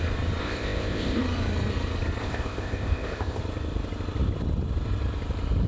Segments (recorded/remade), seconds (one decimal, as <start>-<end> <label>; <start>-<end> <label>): 0.0-0.4 recorded; 0.4-1.2 remade; 1.2-2.2 recorded; 2.2-3.4 remade; 3.4-5.7 recorded